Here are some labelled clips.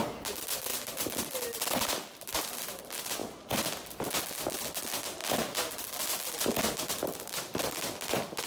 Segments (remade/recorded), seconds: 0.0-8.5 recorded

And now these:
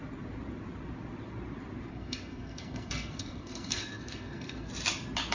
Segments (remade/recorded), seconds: 0.0-1.9 recorded; 1.9-4.7 remade; 4.7-5.3 recorded

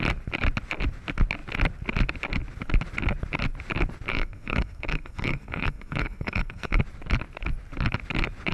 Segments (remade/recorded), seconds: 0.0-4.1 recorded; 4.1-6.8 remade; 6.8-8.5 recorded

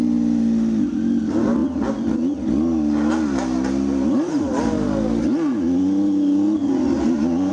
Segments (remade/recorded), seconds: 0.0-7.5 recorded

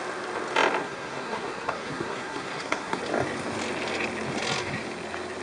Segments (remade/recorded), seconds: 0.0-0.8 recorded; 0.8-3.0 remade; 3.0-5.4 recorded

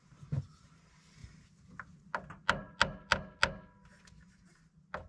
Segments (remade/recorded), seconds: 0.0-5.1 recorded